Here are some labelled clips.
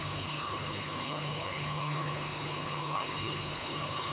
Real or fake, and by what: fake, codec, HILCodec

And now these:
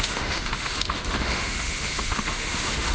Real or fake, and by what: fake, autoencoder, DAC-VAE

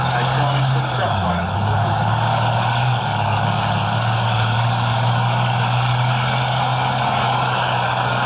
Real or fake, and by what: fake, codec, DAC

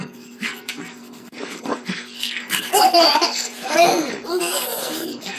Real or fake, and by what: fake, codec, SNAC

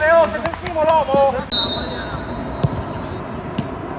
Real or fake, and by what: real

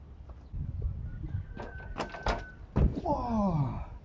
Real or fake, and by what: real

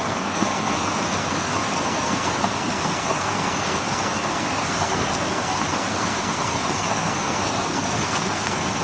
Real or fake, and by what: fake, codec, SNAC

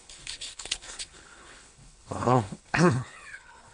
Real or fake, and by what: fake, codec, HILCodec